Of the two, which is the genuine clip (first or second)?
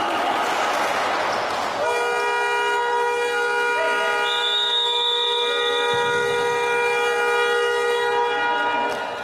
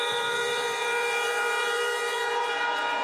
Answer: first